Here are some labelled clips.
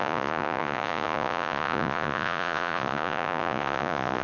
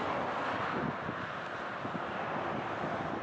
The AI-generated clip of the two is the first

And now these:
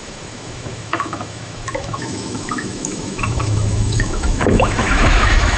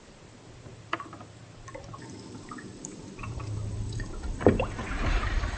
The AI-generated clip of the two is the first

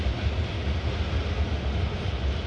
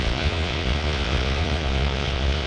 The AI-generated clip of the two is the second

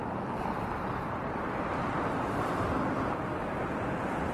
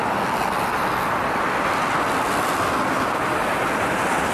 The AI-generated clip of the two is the first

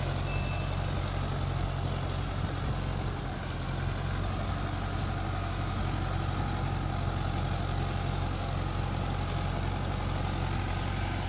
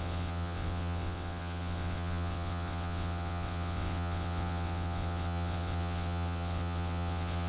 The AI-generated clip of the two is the second